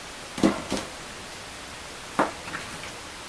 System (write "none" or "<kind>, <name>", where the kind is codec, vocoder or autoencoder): none